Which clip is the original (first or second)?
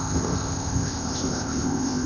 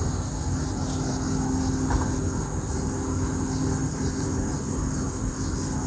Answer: second